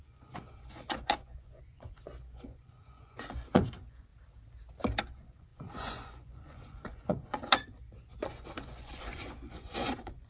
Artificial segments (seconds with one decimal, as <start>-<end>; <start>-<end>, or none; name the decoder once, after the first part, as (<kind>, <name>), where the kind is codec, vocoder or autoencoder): 0.0-4.1 (vocoder, Vocos); 5.0-10.3